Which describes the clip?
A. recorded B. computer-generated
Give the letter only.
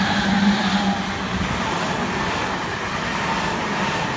A